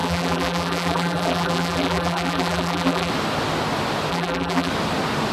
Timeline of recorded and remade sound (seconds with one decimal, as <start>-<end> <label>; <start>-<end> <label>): 0.0-3.1 remade; 3.1-4.1 recorded; 4.1-4.7 remade; 4.7-5.3 recorded